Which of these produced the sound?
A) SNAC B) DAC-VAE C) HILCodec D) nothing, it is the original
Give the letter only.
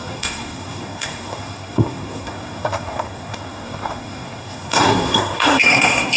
A